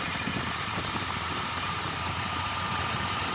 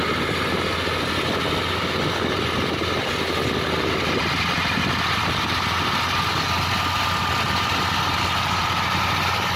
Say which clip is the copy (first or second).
first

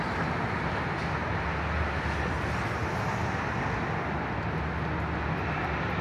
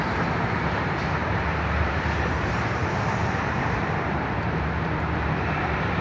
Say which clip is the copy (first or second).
second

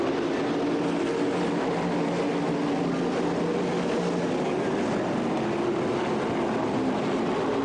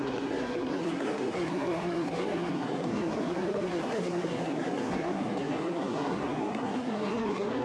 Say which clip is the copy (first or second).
second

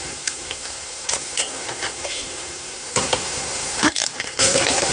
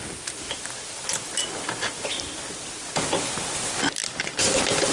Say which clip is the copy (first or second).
first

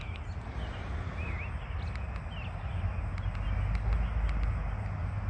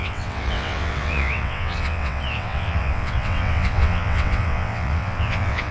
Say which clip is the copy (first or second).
second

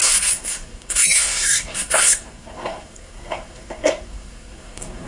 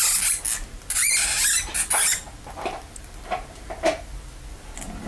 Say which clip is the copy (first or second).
first